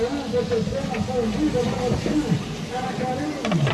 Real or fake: real